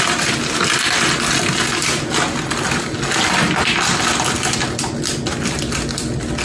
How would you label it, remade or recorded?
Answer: recorded